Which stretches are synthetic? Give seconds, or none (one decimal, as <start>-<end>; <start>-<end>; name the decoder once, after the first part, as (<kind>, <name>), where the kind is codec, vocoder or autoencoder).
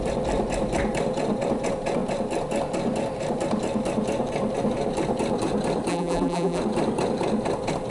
5.9-6.6 (vocoder, BigVGAN v2)